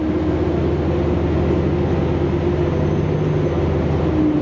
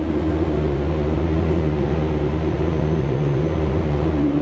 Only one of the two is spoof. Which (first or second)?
second